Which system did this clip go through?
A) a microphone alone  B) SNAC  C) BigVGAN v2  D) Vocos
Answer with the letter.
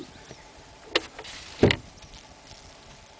A